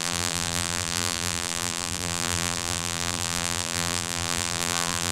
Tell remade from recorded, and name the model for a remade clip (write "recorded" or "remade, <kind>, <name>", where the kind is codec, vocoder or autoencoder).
remade, vocoder, BigVGAN v2